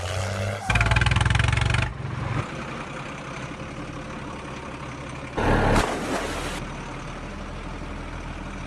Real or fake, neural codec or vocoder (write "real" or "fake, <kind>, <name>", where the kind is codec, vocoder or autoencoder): real